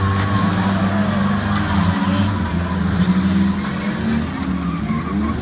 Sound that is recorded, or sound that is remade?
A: recorded